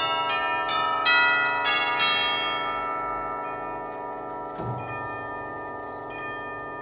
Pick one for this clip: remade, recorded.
recorded